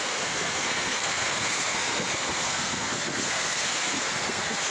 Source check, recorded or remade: remade